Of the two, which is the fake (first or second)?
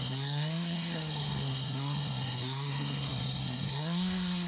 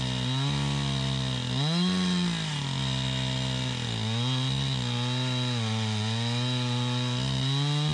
first